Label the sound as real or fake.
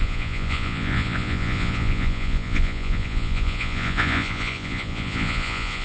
fake